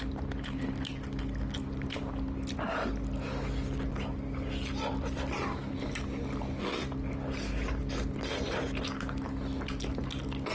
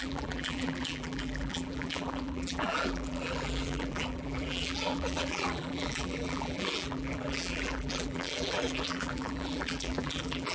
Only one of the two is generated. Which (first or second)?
second